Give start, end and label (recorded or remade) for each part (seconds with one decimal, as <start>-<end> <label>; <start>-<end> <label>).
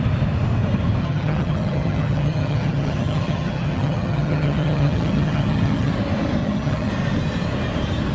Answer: 0.0-1.0 recorded; 1.0-5.9 remade; 5.9-6.4 recorded; 6.4-6.9 remade; 6.9-8.1 recorded